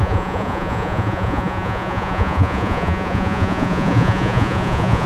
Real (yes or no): no